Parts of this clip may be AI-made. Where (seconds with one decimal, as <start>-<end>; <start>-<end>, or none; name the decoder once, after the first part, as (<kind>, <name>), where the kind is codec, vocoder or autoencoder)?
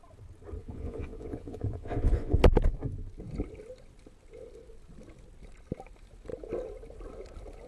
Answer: 0.6-2.4 (vocoder, Vocos)